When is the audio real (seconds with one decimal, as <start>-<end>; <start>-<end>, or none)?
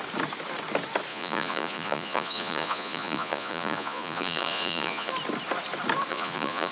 0.0-1.1; 5.1-6.1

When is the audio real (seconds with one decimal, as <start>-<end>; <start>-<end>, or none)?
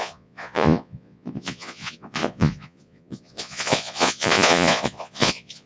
none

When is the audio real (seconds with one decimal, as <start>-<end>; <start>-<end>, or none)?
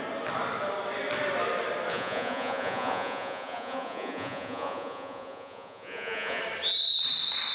0.0-1.9; 6.4-7.5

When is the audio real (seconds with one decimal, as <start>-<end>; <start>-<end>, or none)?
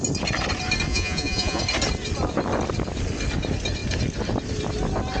0.0-0.9; 1.6-5.2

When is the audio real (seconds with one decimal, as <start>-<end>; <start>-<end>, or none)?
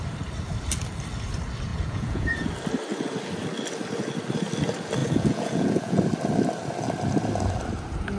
0.0-1.7; 2.5-5.0; 6.0-8.2